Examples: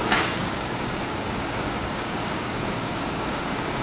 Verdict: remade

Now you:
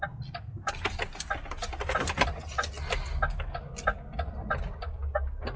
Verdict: recorded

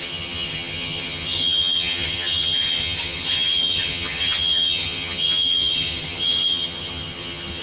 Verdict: remade